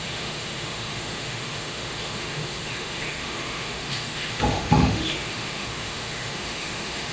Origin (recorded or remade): remade